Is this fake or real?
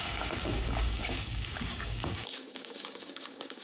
fake